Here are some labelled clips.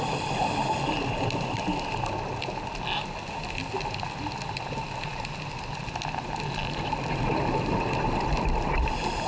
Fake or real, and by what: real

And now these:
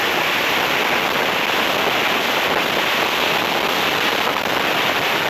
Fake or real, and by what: real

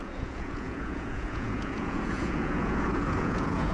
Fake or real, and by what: fake, vocoder, Vocos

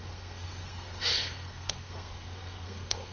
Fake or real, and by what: fake, codec, SNAC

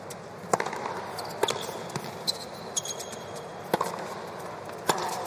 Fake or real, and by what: real